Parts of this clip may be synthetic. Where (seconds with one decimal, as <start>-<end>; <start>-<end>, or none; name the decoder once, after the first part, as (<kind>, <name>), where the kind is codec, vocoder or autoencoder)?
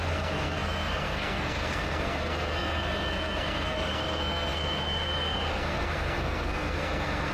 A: 0.0-7.3 (codec, SNAC)